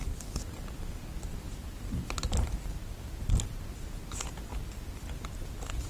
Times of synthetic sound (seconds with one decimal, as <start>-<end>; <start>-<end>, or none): none